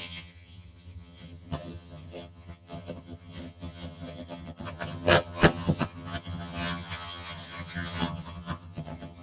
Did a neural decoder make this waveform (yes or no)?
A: yes